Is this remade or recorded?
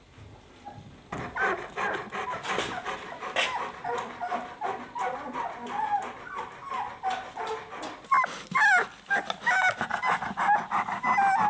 recorded